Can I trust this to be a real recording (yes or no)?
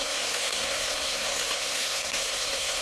no